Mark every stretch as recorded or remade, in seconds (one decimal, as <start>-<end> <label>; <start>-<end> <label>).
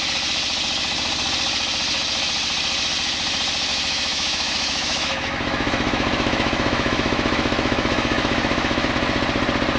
0.0-3.7 recorded; 3.7-8.9 remade; 8.9-9.8 recorded